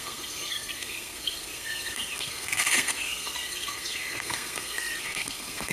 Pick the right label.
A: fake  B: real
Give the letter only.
A